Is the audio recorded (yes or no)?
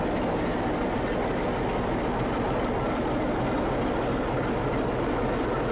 yes